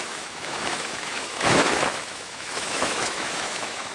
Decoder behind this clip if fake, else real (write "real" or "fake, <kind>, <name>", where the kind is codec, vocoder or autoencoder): fake, autoencoder, DAC-VAE